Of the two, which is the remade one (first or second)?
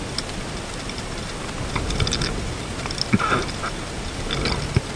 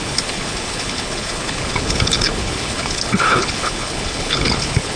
second